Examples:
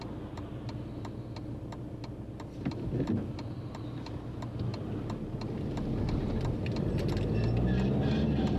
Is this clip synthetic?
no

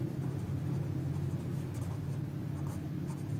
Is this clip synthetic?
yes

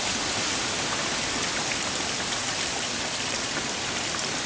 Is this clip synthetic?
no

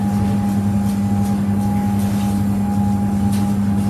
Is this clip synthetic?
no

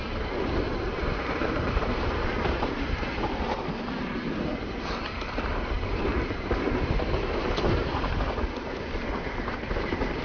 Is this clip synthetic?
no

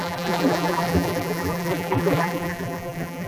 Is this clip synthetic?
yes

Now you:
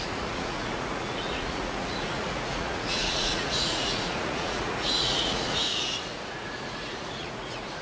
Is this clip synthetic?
yes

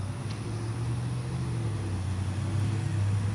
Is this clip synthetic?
no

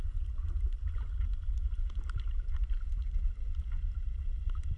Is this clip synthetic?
no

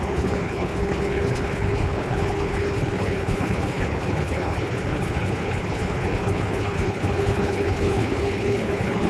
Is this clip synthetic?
yes